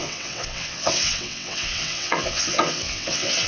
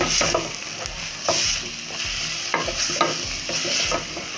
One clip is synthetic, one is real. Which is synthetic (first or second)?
first